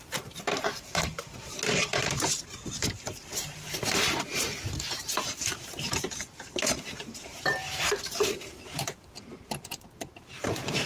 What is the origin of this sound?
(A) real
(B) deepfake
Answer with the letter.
B